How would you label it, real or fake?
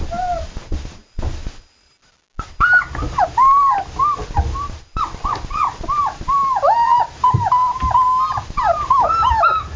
real